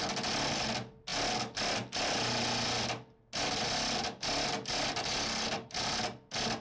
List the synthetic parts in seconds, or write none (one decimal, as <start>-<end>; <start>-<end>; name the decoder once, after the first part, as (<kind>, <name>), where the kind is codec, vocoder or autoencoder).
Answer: none